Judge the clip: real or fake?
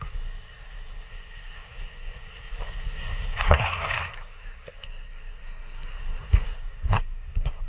fake